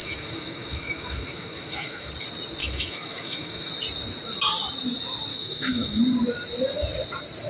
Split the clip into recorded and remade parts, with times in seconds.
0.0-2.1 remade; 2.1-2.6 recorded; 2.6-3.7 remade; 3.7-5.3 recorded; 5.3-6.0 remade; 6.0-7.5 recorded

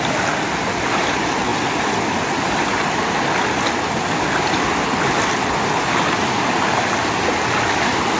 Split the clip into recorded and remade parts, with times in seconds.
0.0-8.2 recorded

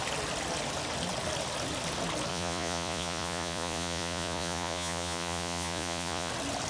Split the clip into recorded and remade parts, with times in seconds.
0.0-2.3 recorded; 2.3-6.3 remade; 6.3-6.7 recorded

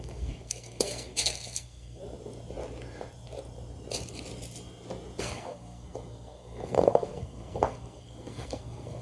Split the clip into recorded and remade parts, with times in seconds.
0.0-2.0 remade; 2.0-5.2 recorded; 5.2-9.0 remade

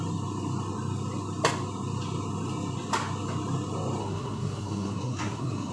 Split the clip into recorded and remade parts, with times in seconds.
0.0-4.0 recorded; 4.0-5.7 remade

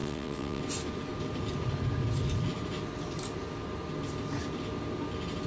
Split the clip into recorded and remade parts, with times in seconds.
0.0-0.6 remade; 0.6-5.5 recorded

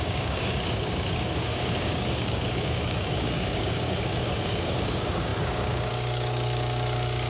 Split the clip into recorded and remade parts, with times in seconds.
0.0-7.3 remade